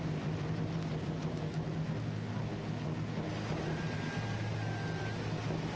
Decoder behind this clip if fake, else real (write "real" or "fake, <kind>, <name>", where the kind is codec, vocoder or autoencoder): real